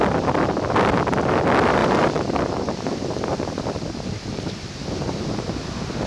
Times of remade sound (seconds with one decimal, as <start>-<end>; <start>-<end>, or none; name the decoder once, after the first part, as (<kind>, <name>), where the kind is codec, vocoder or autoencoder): 1.8-5.5 (vocoder, BigVGAN v2)

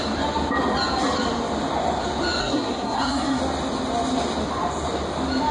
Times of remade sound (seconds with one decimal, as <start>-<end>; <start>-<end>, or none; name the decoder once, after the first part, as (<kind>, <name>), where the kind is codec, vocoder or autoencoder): 2.4-3.4 (codec, SNAC)

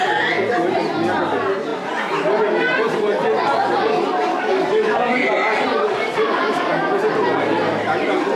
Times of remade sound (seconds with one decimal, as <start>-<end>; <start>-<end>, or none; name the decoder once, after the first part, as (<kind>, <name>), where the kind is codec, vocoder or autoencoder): 4.3-5.3 (codec, DAC); 5.8-6.7

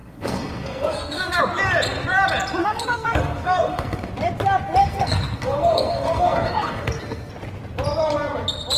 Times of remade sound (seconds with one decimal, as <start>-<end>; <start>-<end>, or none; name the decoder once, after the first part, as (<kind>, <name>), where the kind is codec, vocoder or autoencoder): 0.0-1.4 (codec, SNAC); 2.6-4.1; 4.8-7.3

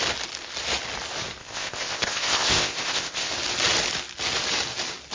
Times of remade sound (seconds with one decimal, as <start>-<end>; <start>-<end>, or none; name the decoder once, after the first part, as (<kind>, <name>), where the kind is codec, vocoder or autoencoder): 1.4-3.3 (codec, ZipCodec)